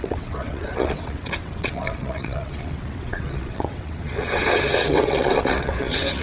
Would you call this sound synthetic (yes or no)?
yes